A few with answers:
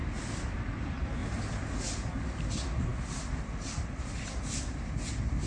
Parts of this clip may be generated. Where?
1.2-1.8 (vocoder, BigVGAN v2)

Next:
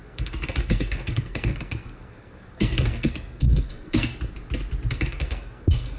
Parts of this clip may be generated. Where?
0.0-4.1 (codec, SNAC); 4.9-6.0

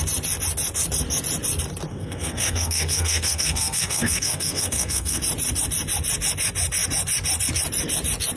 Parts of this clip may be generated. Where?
1.9-5.2 (codec, SNAC)

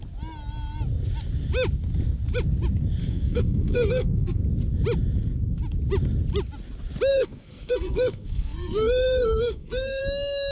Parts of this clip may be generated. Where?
3.0-4.4 (codec, SNAC); 7.1-10.0

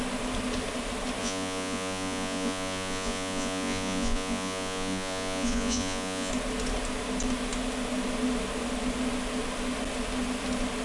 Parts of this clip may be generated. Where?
1.2-6.3 (vocoder, Vocos)